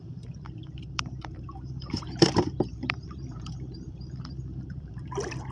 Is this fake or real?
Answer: fake